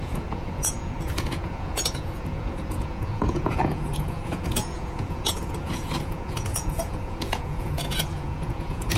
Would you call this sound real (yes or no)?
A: no